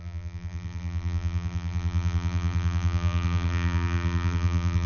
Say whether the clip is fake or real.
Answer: fake